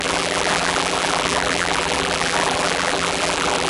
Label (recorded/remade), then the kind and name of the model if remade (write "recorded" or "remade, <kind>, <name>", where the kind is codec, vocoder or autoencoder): remade, vocoder, BigVGAN v2